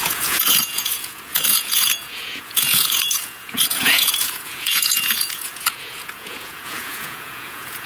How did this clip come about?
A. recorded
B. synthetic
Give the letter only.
B